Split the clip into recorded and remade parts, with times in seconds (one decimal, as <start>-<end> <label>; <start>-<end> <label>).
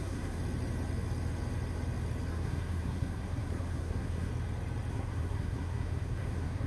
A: 0.0-0.4 remade; 0.4-2.3 recorded; 2.3-4.3 remade; 4.3-4.9 recorded; 4.9-6.7 remade